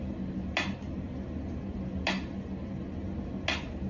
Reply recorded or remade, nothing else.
recorded